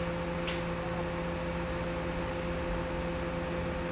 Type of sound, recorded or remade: recorded